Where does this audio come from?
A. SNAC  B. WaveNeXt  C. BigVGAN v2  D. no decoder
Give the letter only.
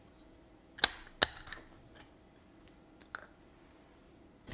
D